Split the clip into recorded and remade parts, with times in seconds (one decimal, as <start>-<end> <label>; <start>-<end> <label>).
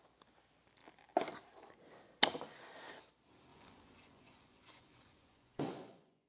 0.0-3.5 recorded; 3.5-6.3 remade